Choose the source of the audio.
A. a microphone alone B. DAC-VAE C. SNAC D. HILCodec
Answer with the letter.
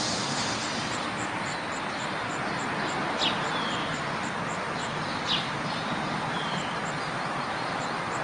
A